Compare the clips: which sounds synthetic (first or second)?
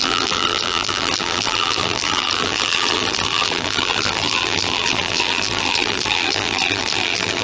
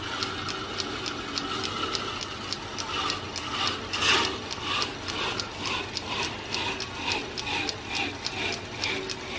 first